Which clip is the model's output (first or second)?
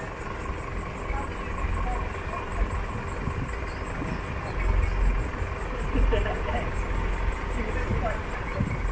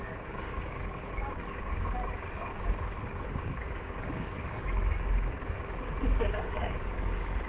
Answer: second